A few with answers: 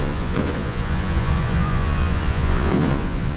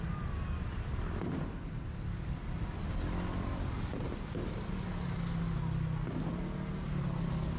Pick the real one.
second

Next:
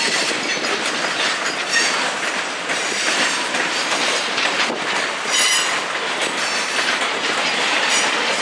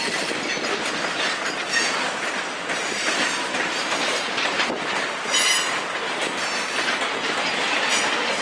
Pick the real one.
second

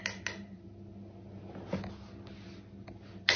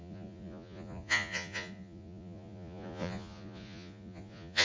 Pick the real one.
first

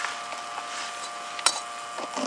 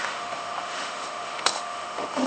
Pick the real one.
first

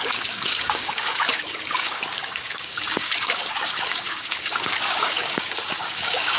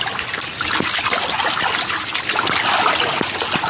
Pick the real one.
second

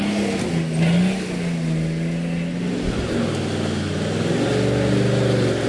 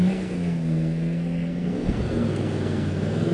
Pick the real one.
first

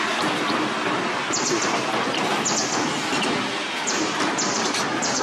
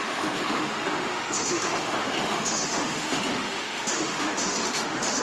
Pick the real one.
first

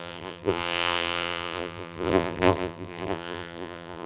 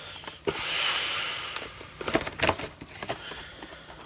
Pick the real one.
second